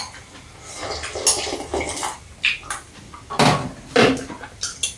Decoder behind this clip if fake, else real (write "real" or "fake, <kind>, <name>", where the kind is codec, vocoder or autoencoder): real